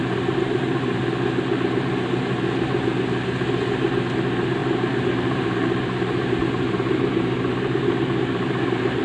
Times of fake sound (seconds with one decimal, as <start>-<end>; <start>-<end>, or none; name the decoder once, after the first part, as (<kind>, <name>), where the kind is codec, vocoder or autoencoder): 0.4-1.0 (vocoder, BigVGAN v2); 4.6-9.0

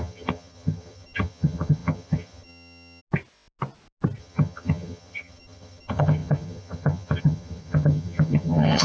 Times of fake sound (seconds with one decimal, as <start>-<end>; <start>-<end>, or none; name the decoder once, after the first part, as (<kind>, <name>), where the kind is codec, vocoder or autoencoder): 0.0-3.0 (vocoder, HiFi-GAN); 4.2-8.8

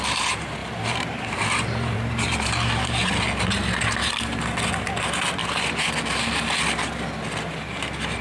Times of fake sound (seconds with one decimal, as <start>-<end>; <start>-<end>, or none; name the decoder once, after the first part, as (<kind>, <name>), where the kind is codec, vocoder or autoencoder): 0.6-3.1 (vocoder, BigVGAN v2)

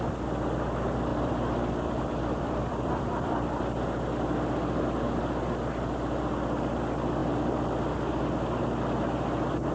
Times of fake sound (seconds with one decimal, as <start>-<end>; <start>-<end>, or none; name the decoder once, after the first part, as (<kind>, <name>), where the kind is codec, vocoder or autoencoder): 1.1-3.6 (vocoder, BigVGAN v2)

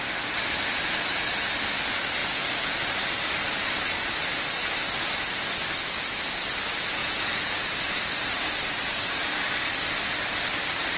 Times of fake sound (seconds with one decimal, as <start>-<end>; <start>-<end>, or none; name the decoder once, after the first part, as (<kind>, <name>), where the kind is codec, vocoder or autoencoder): 2.2-2.8 (vocoder, Vocos); 7.0-7.7

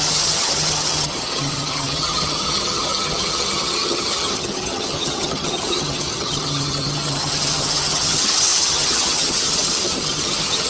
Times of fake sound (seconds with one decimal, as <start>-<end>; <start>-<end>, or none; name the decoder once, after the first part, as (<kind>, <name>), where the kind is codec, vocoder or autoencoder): 0.0-10.7 (vocoder, HiFi-GAN)

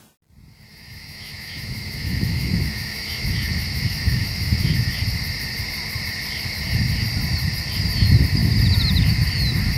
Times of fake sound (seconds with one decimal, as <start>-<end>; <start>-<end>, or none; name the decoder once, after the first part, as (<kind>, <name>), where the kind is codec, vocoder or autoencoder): 0.7-5.0 (autoencoder, DAC-VAE)